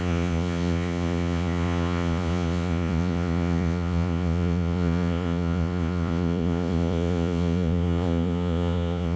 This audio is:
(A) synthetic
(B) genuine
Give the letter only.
A